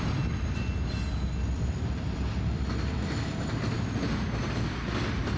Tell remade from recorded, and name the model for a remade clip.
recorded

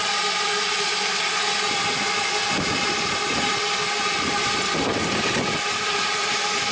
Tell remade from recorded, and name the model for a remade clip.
recorded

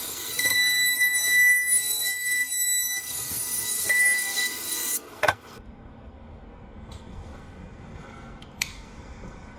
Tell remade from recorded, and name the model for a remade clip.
remade, codec, SNAC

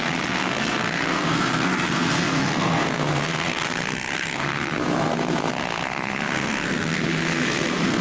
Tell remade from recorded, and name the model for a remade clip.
remade, codec, SNAC